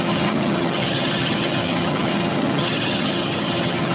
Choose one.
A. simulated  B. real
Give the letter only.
A